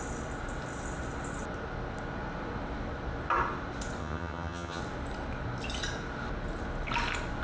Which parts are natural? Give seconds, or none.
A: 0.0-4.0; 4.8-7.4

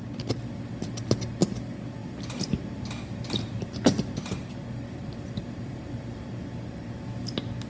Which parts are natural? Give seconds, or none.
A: 0.0-2.0; 6.3-7.7

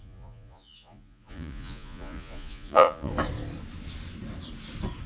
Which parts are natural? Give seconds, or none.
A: 3.1-5.1

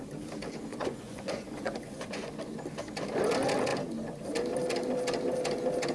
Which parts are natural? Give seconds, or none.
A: 0.0-0.7; 2.3-5.9

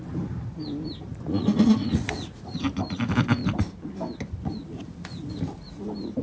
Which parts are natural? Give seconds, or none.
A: 0.0-1.1; 2.6-6.2

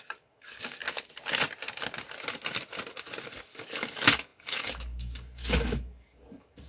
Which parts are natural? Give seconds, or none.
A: 0.8-3.4

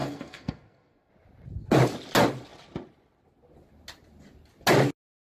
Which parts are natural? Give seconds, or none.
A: 1.1-5.2